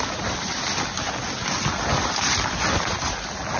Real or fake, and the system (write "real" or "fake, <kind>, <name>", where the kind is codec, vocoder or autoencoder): real